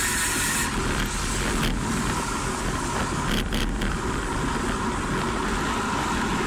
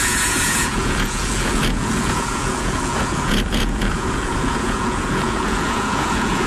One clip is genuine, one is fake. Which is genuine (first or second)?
first